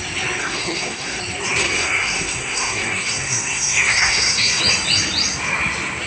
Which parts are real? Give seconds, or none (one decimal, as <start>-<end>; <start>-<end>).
0.0-0.4; 1.2-1.6; 4.6-6.1